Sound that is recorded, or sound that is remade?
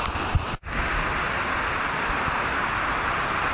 recorded